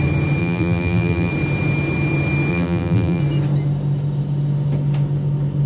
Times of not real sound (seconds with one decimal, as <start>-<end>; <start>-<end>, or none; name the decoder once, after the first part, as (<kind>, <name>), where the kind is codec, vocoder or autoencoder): 0.4-1.3 (vocoder, BigVGAN v2); 2.5-3.2